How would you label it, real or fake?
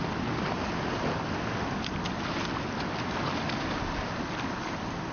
real